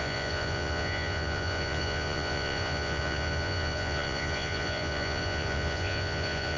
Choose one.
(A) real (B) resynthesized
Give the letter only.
B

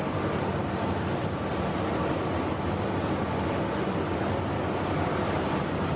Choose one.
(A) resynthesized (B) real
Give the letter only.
B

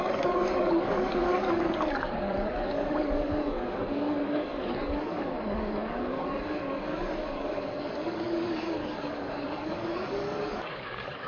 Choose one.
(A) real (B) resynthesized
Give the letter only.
B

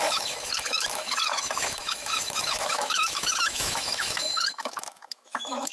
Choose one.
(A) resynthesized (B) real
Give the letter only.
A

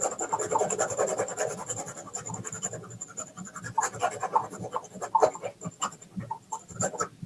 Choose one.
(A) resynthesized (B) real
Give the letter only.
B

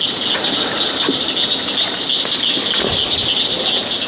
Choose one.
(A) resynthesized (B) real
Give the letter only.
B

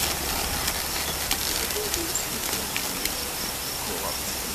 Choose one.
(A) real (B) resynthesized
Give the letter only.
A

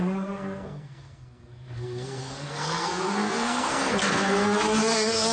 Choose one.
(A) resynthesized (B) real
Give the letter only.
A